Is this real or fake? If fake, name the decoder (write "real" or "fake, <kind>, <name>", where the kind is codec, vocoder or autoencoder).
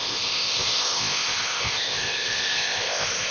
fake, codec, ZipCodec